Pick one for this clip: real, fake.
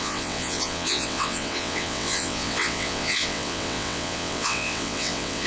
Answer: fake